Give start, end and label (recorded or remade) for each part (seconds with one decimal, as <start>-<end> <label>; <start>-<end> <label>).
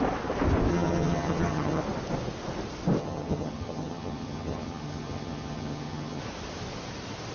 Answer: 0.0-0.7 recorded; 0.7-1.8 remade; 1.8-3.0 recorded; 3.0-6.2 remade; 6.2-7.3 recorded